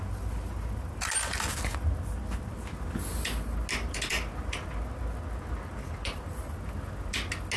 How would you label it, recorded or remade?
recorded